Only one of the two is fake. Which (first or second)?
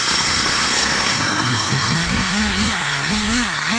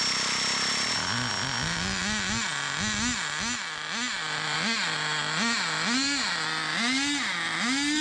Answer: first